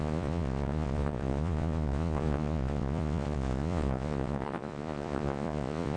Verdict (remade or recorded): remade